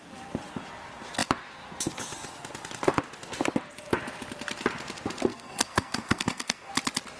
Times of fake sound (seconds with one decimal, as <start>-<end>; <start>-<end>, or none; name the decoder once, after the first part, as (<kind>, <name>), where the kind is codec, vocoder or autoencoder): 5.3-6.7 (codec, SNAC)